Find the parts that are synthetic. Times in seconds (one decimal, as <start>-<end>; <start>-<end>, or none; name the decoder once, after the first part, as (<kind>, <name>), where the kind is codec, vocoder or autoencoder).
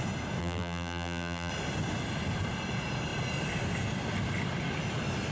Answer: 0.4-1.5 (vocoder, BigVGAN v2)